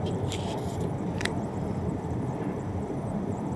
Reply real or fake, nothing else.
fake